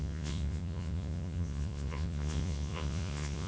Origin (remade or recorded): remade